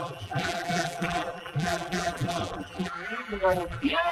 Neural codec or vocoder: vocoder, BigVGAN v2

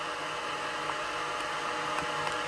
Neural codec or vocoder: none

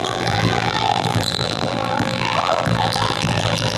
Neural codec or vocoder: vocoder, BigVGAN v2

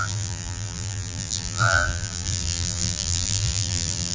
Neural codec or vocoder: vocoder, BigVGAN v2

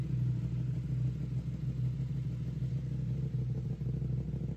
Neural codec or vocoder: none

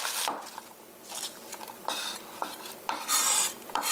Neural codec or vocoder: vocoder, BigVGAN v2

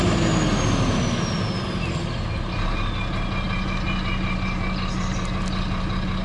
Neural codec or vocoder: none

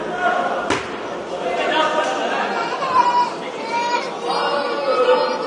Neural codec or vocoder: none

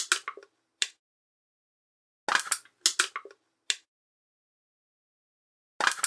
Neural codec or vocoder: none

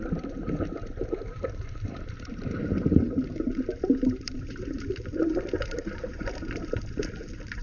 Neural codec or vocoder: vocoder, BigVGAN v2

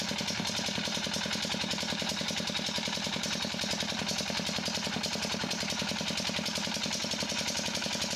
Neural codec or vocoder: vocoder, BigVGAN v2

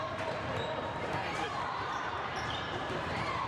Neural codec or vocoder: vocoder, BigVGAN v2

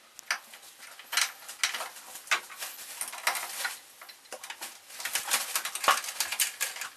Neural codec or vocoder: none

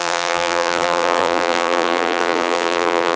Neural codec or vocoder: vocoder, BigVGAN v2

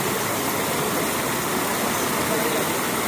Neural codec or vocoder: none